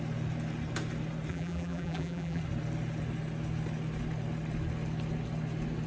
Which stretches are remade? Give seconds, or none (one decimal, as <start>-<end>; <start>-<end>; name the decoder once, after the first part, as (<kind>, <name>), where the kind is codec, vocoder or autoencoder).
1.3-2.4 (vocoder, BigVGAN v2)